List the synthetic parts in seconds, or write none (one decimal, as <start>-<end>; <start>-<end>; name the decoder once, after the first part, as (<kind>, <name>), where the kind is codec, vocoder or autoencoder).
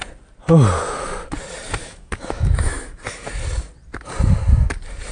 1.8-3.3 (autoencoder, DAC-VAE)